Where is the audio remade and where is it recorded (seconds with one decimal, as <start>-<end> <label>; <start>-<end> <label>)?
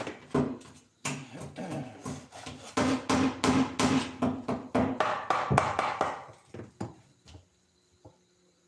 0.0-8.7 recorded